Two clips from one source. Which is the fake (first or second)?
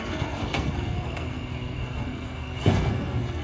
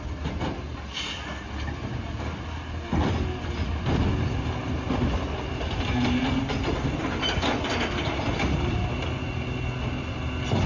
first